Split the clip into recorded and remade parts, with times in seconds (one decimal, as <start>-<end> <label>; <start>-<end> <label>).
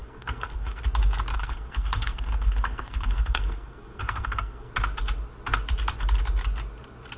0.0-0.8 remade; 0.8-1.3 recorded; 1.3-4.7 remade; 4.7-7.2 recorded